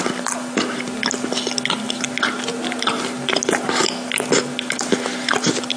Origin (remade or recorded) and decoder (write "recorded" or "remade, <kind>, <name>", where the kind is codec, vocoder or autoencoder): recorded